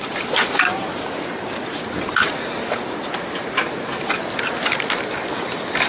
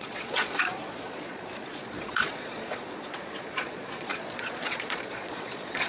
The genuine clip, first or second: first